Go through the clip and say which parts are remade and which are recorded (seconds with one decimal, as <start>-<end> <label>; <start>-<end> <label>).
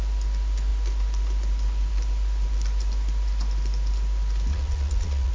0.0-4.5 recorded; 4.5-5.3 remade